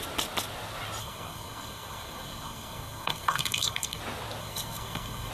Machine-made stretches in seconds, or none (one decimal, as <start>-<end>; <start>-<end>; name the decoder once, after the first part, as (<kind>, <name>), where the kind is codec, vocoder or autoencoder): 1.0-4.0 (codec, SNAC); 4.4-5.3